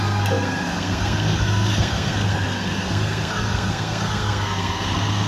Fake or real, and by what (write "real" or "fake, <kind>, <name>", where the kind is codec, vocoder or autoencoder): fake, codec, SNAC